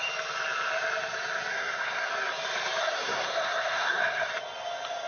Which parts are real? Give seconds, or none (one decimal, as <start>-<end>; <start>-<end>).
0.0-1.5; 2.1-2.8; 4.3-5.1